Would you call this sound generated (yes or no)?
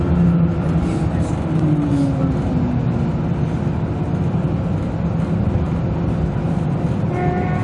no